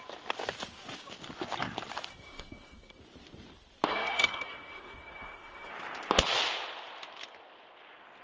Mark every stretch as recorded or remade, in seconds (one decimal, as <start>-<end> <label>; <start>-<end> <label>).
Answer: 0.0-2.1 recorded; 2.1-3.0 remade; 3.0-3.9 recorded; 3.9-5.7 remade; 5.7-8.2 recorded